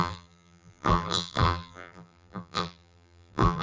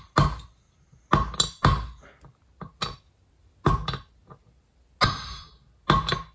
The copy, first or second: first